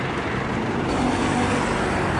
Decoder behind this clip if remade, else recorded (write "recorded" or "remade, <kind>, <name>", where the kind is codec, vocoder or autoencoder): recorded